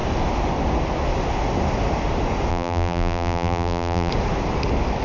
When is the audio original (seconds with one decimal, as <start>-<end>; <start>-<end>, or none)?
0.0-2.5; 4.1-5.0

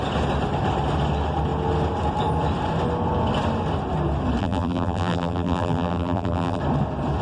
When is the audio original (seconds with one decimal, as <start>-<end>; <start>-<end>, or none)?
0.0-4.4; 6.6-7.2